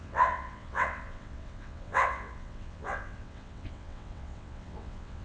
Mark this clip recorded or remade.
remade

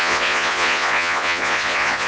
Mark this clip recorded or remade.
remade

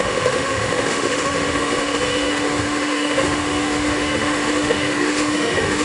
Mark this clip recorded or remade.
remade